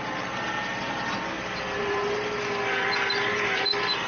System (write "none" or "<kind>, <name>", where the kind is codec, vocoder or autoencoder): none